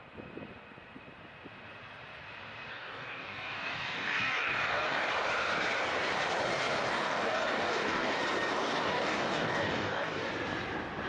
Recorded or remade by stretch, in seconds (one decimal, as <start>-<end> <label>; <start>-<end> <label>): 0.0-2.7 recorded; 2.7-5.1 remade; 5.1-6.9 recorded; 6.9-8.2 remade; 8.2-8.6 recorded; 8.6-10.3 remade; 10.3-11.1 recorded